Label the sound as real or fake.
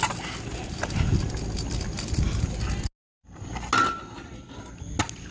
real